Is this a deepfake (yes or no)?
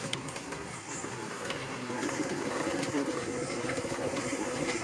yes